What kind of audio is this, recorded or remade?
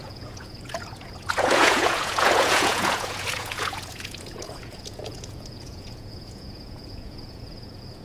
remade